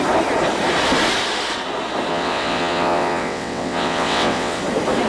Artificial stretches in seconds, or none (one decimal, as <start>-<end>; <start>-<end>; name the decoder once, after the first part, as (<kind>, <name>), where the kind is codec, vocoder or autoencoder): 2.1-4.6 (vocoder, WaveNeXt)